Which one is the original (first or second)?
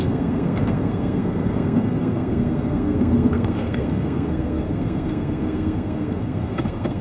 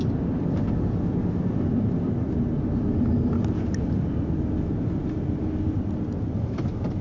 second